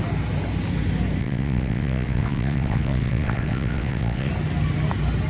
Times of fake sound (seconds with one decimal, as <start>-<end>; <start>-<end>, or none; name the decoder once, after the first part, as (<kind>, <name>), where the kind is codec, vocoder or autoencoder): 1.2-4.3 (vocoder, WaveNeXt)